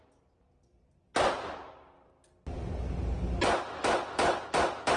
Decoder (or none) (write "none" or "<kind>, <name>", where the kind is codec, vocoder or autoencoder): none